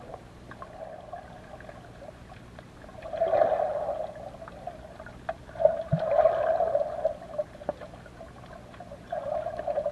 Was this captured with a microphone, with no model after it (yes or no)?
yes